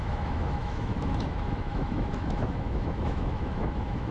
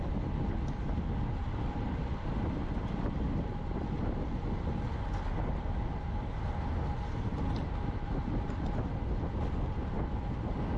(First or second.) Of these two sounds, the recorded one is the second